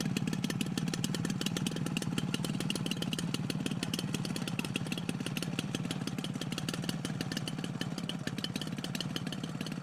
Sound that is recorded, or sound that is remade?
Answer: remade